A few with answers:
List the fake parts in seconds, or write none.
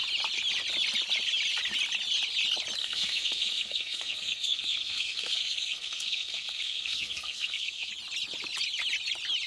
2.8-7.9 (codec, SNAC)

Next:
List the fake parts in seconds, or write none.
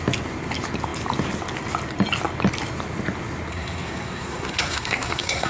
3.5-5.5 (codec, SNAC)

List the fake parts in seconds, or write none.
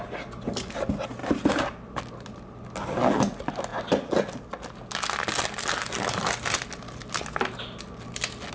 none